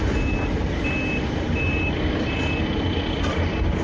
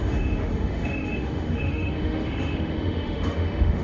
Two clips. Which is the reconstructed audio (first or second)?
second